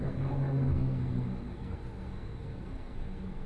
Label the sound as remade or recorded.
remade